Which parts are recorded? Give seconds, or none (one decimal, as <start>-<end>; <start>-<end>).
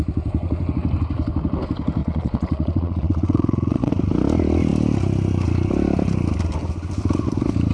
0.0-2.0; 3.9-7.7